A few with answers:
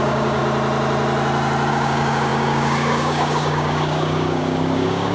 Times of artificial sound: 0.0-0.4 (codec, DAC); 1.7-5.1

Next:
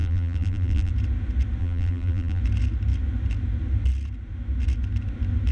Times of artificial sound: 0.0-0.9 (vocoder, BigVGAN v2); 1.6-2.4

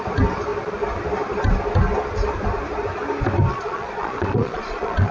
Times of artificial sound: 3.5-5.1 (vocoder, Vocos)